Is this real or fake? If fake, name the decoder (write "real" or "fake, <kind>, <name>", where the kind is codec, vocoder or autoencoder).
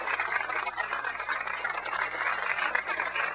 fake, vocoder, BigVGAN v2